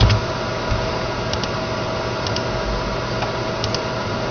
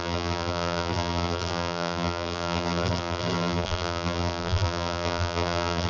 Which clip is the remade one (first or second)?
second